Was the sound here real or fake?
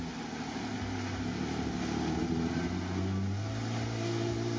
real